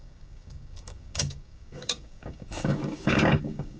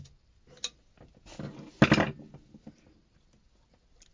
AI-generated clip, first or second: first